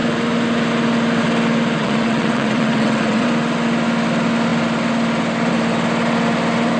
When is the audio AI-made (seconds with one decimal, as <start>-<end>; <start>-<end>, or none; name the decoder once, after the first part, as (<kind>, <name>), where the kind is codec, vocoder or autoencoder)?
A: 1.8-3.3 (vocoder, WaveNeXt)